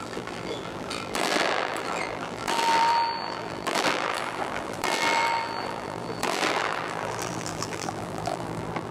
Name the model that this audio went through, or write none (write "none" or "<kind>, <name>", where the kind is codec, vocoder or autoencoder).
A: vocoder, BigVGAN v2